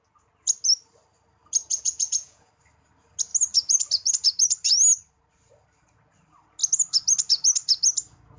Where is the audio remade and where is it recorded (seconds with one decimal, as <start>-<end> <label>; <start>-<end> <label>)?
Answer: 0.0-1.7 recorded; 1.7-2.5 remade; 2.5-8.4 recorded